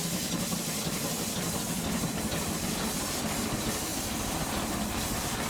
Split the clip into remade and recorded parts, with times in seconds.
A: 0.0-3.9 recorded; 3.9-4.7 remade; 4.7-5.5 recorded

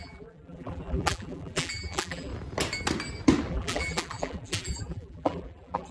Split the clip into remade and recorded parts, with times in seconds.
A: 0.0-2.3 remade; 2.3-3.5 recorded; 3.5-5.9 remade